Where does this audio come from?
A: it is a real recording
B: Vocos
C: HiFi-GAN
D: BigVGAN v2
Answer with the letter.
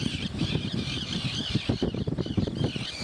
D